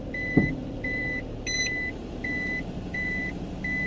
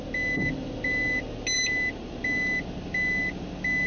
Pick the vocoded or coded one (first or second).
first